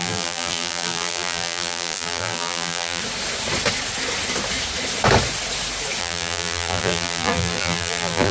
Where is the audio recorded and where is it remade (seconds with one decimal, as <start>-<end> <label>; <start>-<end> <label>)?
0.0-3.0 remade; 3.0-6.0 recorded; 6.0-8.3 remade